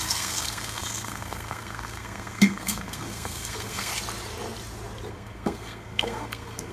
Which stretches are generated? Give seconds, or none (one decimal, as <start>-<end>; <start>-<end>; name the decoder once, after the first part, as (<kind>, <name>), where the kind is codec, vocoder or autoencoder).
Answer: 0.0-3.9 (codec, SNAC); 5.1-6.7